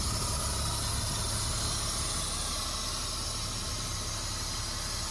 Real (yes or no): yes